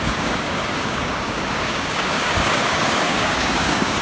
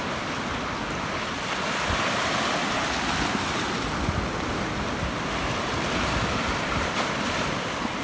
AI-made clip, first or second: first